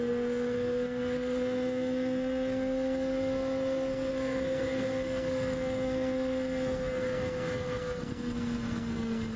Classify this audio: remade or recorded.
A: remade